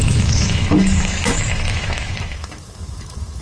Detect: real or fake fake